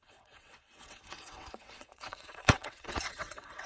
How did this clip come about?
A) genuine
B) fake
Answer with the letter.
B